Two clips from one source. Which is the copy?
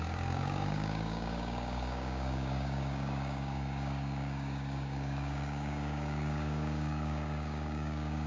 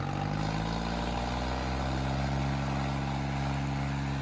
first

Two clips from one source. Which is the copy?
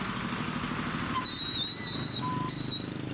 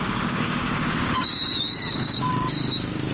second